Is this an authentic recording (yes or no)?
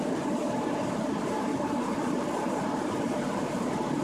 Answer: no